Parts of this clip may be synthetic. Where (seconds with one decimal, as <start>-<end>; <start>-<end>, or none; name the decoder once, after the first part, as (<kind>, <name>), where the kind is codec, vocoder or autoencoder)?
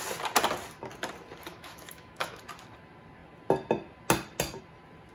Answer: 1.5-2.4 (autoencoder, DAC-VAE)